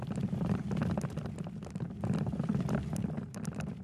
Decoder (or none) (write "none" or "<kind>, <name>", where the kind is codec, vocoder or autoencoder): vocoder, BigVGAN v2